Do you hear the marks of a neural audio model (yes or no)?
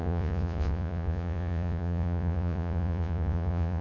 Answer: yes